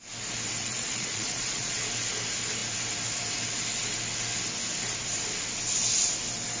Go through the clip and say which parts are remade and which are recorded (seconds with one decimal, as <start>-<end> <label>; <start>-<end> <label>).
0.0-0.6 recorded; 0.6-1.8 remade; 1.8-6.6 recorded